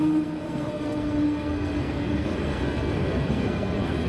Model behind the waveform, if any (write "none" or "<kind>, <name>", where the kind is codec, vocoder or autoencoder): codec, SNAC